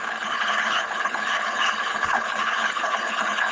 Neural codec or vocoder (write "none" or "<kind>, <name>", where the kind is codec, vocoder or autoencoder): codec, HILCodec